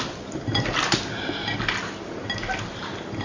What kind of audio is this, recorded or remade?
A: recorded